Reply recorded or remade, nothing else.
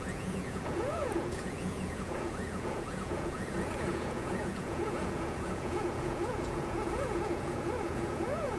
remade